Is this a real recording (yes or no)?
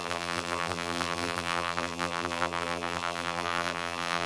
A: no